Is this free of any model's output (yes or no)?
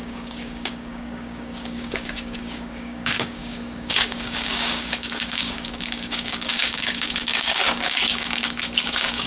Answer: no